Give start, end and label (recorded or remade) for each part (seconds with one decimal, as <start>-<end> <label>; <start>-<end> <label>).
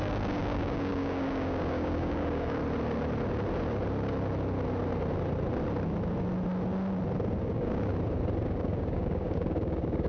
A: 0.0-2.6 remade; 2.6-7.4 recorded; 7.4-7.9 remade; 7.9-8.4 recorded; 8.4-10.1 remade